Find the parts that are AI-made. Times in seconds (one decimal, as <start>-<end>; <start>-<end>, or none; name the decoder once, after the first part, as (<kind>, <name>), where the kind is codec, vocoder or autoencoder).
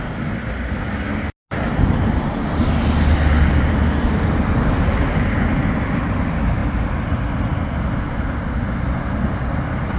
none